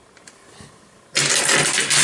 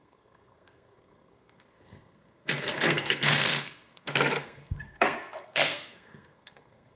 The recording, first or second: first